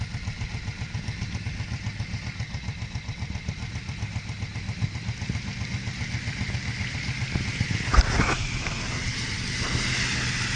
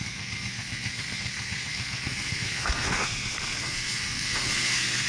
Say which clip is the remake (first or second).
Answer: second